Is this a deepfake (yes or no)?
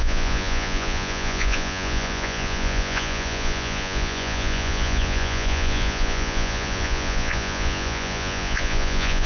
yes